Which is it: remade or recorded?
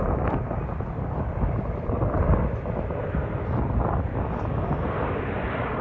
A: recorded